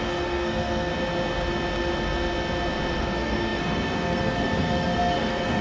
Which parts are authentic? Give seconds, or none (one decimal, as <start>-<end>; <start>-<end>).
0.9-3.0